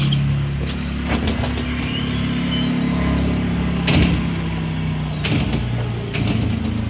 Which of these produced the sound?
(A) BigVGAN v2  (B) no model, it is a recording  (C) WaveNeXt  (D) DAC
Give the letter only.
B